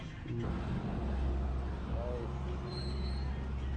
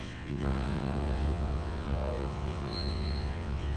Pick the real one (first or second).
first